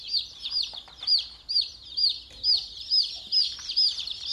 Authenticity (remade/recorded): remade